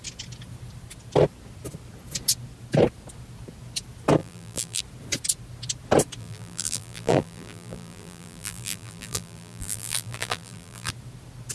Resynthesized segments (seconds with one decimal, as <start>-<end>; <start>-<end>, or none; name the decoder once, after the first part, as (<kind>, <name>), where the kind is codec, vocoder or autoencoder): 4.2-4.8 (vocoder, BigVGAN v2); 6.2-10.9